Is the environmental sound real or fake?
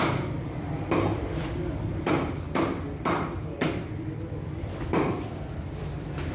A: fake